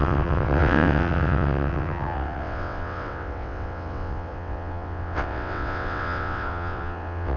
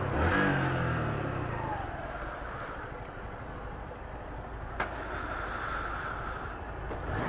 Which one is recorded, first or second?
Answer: second